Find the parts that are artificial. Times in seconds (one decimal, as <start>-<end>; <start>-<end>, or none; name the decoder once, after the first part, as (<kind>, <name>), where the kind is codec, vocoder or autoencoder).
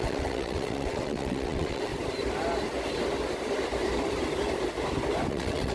0.0-1.9 (vocoder, WaveNeXt); 5.3-5.7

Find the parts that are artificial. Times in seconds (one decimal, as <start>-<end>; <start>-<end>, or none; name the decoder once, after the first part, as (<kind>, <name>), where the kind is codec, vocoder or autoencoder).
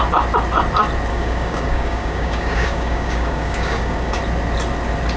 1.1-4.2 (codec, DAC)